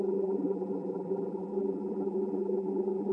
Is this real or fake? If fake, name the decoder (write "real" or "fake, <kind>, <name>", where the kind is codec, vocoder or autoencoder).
fake, vocoder, BigVGAN v2